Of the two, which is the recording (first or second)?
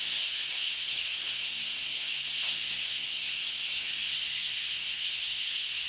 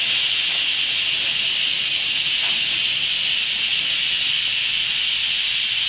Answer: second